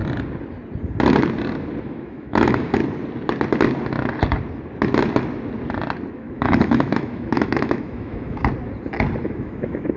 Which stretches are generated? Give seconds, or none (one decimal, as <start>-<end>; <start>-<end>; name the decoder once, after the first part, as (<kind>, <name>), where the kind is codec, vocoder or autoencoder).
1.8-2.8 (autoencoder, DAC-VAE); 6.1-8.5; 9.2-10.0